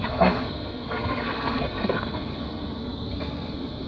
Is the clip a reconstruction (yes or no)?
yes